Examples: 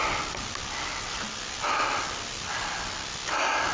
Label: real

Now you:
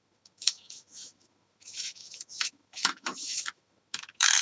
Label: fake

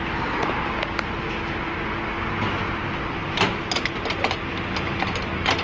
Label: real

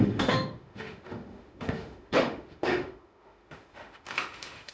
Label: fake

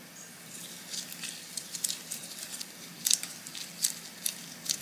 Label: real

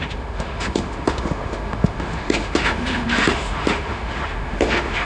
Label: fake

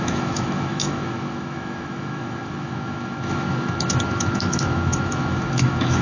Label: fake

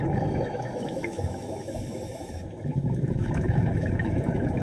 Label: fake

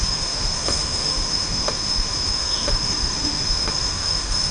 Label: fake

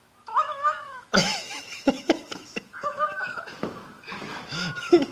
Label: fake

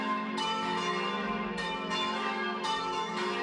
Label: fake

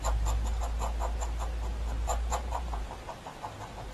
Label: real